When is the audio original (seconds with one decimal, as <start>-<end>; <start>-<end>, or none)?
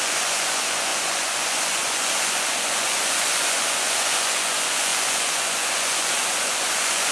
none